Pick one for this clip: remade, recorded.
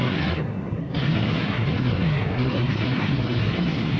remade